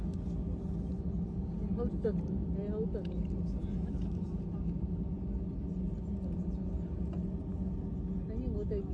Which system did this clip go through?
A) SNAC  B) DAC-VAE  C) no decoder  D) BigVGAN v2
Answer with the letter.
C